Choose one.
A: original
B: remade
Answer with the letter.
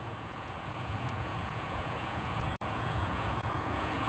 B